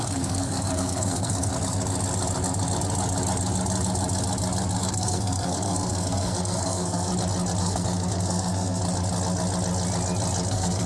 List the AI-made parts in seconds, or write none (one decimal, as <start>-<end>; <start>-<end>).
0.0-1.5; 4.8-7.1; 7.6-8.8; 10.5-10.9